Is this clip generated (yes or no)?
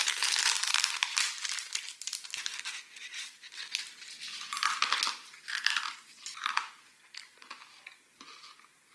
no